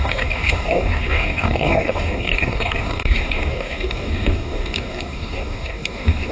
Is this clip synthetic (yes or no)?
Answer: yes